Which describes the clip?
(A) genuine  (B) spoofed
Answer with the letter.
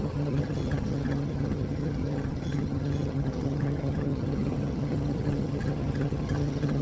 B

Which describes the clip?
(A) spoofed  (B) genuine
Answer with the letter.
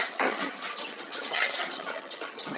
A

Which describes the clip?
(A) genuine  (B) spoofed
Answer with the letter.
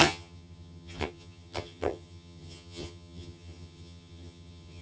B